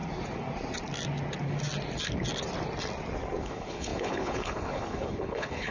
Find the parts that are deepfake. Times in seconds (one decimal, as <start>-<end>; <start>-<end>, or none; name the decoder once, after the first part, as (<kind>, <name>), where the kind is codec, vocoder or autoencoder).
3.4-5.7 (codec, HILCodec)